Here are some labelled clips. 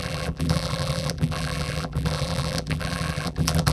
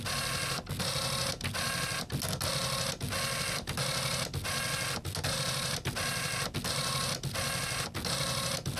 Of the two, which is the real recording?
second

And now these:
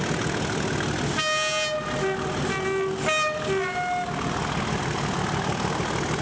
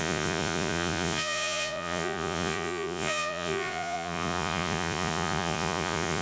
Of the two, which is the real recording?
first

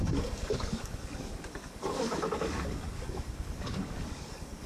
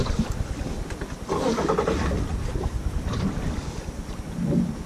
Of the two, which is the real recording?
second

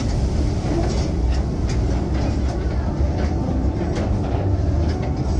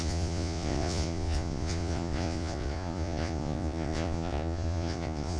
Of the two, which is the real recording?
first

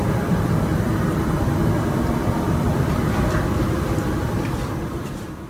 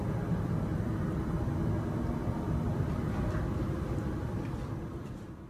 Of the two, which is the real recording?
second